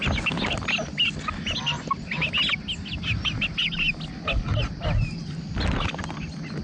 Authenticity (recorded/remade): recorded